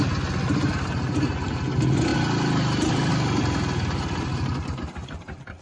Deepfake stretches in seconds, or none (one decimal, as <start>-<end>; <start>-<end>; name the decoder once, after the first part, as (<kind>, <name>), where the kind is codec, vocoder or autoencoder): none